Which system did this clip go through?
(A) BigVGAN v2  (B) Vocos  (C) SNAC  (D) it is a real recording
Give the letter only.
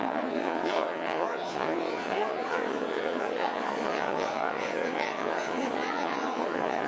B